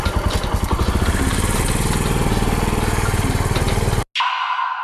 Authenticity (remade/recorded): recorded